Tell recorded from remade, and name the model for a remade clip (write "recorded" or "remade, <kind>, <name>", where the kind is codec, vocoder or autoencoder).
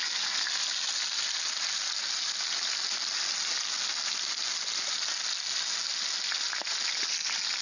recorded